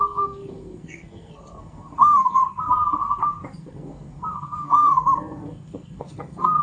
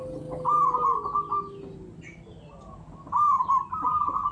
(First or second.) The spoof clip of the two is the first